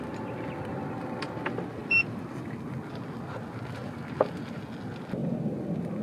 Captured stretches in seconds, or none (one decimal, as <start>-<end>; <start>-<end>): 0.0-1.8; 2.8-5.2